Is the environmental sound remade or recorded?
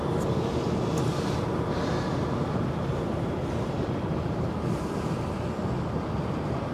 recorded